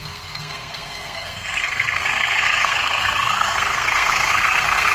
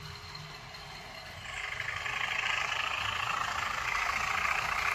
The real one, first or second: second